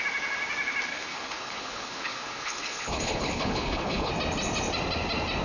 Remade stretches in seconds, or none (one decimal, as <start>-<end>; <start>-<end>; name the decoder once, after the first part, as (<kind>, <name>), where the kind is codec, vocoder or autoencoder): 0.9-4.1 (codec, HILCodec)